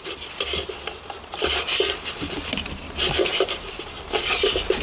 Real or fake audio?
real